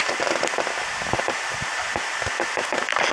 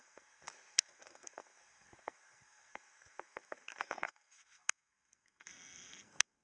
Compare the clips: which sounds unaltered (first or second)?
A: first